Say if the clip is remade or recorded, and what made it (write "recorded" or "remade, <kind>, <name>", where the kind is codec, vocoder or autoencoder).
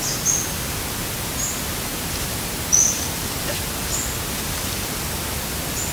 recorded